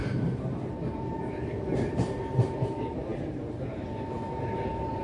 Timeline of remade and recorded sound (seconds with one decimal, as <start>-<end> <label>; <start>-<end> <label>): 0.0-5.0 remade